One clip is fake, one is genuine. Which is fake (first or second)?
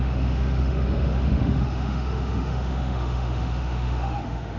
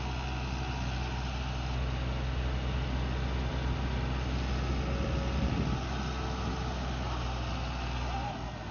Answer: first